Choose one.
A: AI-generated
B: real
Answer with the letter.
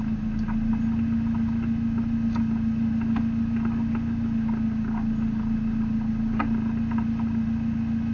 B